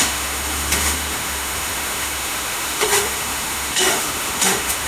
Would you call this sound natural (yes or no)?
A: no